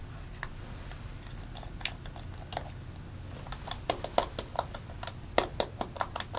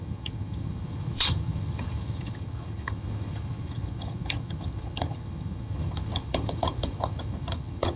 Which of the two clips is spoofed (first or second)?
second